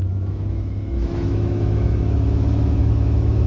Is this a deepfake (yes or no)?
yes